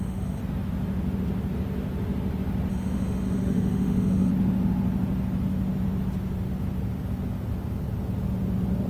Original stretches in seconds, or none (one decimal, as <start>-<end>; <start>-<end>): 0.4-2.7; 4.3-8.9